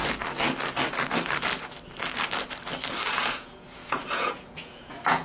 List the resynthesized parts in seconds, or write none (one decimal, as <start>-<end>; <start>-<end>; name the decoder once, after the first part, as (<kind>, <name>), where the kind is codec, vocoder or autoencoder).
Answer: 3.1-5.2 (vocoder, Vocos)